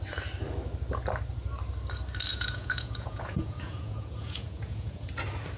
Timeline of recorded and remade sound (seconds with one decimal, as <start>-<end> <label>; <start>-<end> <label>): 0.0-2.3 recorded; 2.3-5.1 remade; 5.1-5.6 recorded